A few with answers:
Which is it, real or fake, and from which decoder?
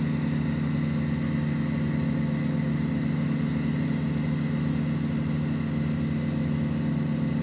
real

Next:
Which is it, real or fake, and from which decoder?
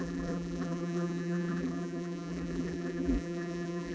fake, vocoder, BigVGAN v2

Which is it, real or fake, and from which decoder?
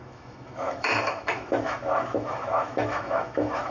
fake, autoencoder, DAC-VAE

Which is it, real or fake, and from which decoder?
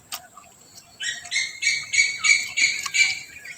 fake, vocoder, BigVGAN v2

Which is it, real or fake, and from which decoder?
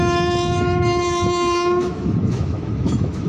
fake, autoencoder, DAC-VAE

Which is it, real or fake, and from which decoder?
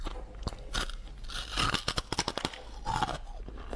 real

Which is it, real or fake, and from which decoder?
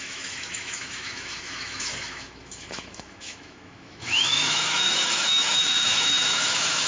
fake, autoencoder, DAC-VAE